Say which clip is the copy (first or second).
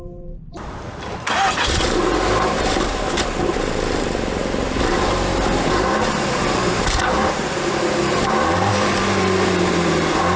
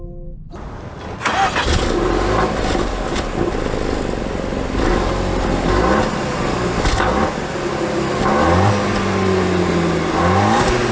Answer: first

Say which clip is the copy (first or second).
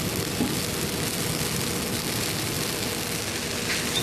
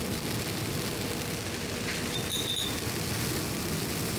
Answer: second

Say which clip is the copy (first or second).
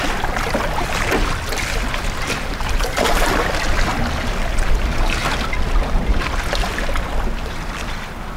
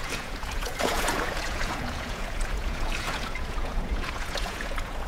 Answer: second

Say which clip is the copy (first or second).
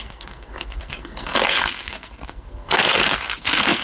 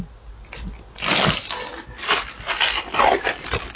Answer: first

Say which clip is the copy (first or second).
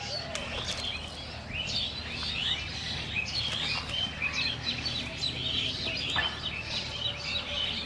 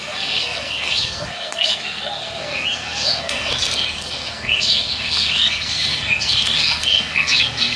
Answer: second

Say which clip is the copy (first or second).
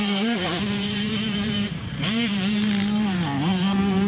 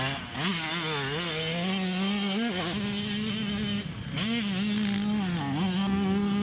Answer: first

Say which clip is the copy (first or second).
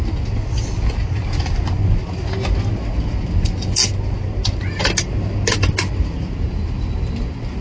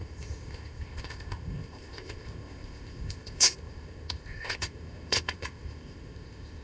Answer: second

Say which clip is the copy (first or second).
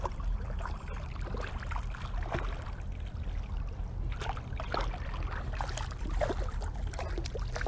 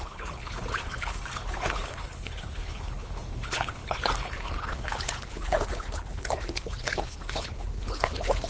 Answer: second